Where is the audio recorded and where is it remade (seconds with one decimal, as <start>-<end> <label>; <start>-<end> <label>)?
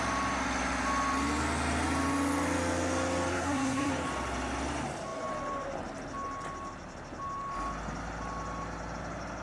0.0-3.3 recorded; 3.3-3.9 remade; 3.9-9.4 recorded